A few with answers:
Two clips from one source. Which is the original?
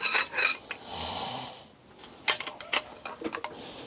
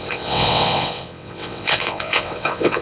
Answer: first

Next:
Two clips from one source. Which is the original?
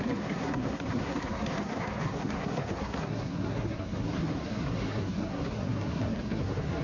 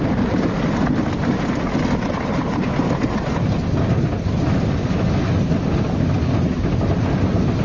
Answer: second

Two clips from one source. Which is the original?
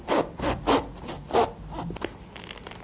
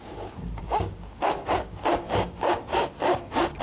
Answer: first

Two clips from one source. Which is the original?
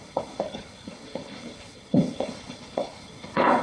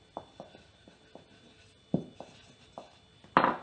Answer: second